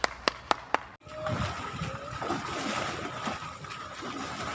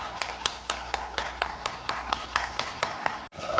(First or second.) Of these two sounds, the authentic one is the first